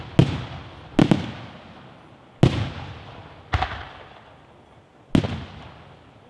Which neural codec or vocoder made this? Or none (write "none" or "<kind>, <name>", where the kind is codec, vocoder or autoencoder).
none